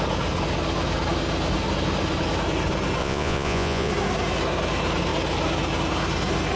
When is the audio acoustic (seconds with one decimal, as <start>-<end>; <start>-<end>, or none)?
0.0-3.0; 3.9-6.6